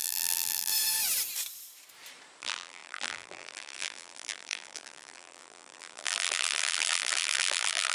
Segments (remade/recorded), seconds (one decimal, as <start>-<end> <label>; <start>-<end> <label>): 0.0-0.7 remade; 0.7-2.4 recorded; 2.4-7.9 remade